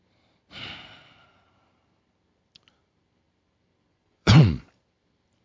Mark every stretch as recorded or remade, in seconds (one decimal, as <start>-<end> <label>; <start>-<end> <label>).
0.0-3.9 recorded; 3.9-4.4 remade; 4.4-5.4 recorded